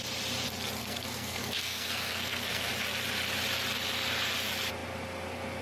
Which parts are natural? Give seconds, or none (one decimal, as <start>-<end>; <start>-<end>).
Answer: 0.0-0.8; 2.7-5.6